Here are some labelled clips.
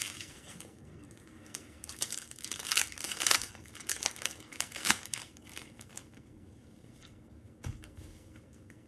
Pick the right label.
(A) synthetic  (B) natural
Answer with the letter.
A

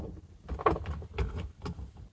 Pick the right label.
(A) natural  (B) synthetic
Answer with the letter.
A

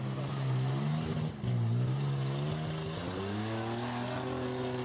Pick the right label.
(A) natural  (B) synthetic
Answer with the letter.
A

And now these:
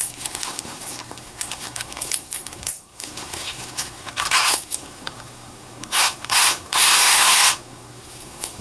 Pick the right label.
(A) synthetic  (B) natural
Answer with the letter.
A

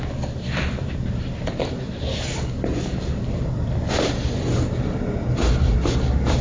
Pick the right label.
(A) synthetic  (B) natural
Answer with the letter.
B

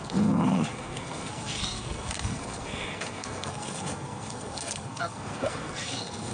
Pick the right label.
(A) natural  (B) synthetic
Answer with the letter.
B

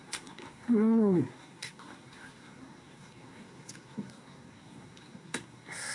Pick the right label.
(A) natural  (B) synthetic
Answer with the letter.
B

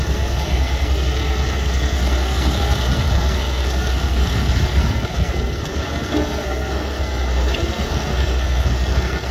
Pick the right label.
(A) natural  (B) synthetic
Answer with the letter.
B